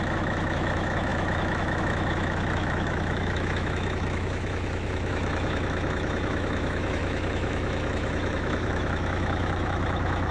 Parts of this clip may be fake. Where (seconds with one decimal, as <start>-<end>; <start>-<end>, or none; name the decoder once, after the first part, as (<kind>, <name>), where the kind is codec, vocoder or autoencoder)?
0.0-10.3 (autoencoder, DAC-VAE)